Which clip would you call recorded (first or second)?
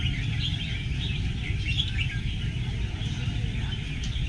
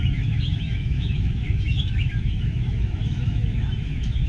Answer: first